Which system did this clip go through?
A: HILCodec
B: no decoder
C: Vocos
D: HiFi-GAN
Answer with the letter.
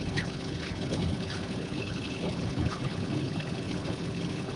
A